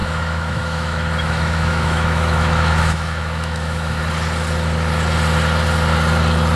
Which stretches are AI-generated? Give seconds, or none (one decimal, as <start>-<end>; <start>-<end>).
0.0-4.0